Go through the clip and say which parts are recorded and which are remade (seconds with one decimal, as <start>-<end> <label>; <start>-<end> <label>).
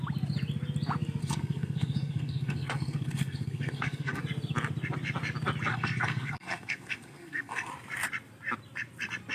0.0-1.2 recorded; 1.2-4.2 remade; 4.2-5.7 recorded; 5.7-7.7 remade; 7.7-9.3 recorded